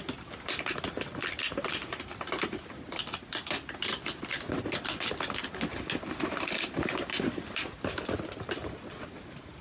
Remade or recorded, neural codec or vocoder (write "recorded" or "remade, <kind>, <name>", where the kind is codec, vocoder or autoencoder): recorded